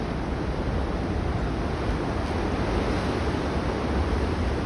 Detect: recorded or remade recorded